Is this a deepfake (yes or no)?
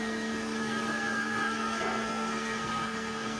yes